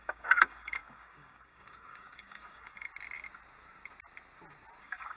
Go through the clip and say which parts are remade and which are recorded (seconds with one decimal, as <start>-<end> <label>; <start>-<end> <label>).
0.0-2.9 remade; 2.9-4.8 recorded; 4.8-5.2 remade